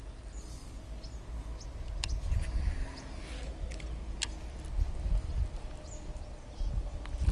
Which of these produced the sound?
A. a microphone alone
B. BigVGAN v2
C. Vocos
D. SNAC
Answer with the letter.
A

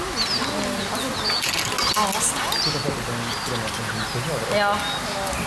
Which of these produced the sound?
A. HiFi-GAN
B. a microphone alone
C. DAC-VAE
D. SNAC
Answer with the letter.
B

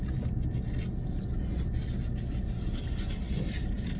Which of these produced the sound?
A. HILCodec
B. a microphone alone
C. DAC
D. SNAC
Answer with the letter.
B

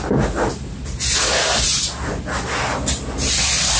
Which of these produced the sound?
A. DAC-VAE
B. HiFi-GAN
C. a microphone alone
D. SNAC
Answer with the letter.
C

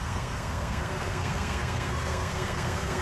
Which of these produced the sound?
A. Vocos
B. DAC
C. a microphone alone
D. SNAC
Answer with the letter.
D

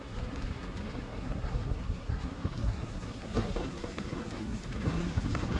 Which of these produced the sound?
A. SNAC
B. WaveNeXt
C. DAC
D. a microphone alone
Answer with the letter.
A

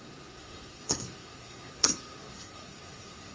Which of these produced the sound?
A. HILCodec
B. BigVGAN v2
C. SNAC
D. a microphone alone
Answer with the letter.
C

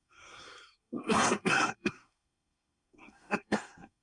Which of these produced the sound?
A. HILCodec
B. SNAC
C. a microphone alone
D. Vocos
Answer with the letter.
B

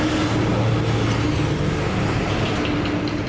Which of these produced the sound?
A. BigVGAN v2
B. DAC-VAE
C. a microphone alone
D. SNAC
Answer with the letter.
C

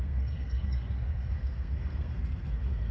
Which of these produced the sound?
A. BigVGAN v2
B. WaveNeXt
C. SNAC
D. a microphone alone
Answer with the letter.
C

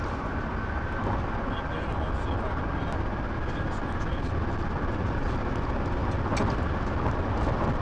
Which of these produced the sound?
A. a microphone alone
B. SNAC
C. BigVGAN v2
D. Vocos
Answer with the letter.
A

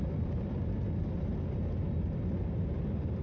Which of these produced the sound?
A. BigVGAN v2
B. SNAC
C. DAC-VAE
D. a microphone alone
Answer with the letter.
D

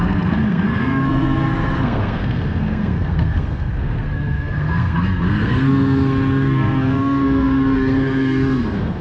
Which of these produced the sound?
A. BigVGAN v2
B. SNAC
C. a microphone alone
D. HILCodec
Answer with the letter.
B